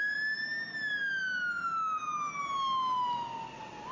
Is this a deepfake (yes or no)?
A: no